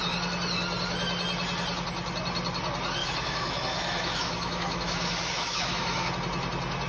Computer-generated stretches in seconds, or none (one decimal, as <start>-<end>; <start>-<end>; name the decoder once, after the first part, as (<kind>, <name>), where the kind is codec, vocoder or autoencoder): 3.0-6.1 (autoencoder, DAC-VAE)